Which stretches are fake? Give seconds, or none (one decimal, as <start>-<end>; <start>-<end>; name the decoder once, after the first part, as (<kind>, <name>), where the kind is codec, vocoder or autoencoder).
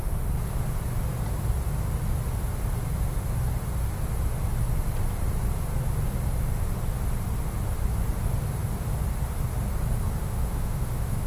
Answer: 10.2-11.3 (autoencoder, DAC-VAE)